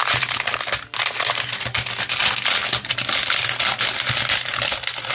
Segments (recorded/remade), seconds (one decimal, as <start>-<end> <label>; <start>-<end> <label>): 0.0-5.1 recorded